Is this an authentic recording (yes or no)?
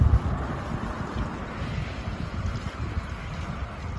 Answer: yes